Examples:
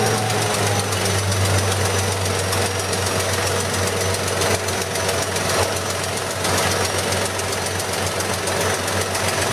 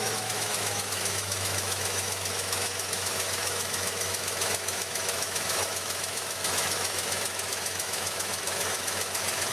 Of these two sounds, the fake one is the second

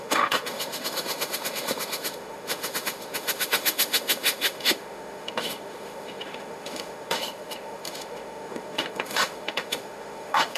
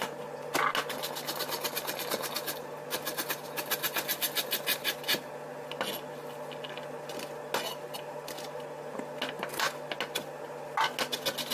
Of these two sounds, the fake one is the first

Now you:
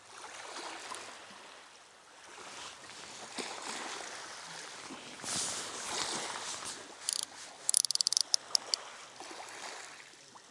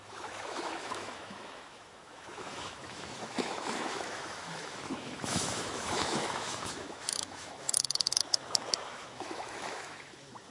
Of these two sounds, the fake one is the second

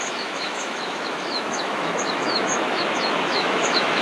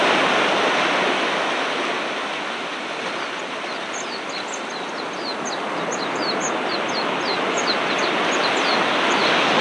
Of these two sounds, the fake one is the first